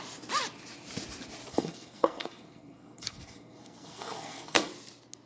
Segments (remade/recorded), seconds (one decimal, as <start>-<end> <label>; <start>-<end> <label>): 0.0-1.5 recorded; 1.5-4.7 remade; 4.7-5.3 recorded